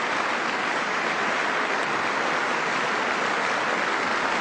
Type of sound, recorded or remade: recorded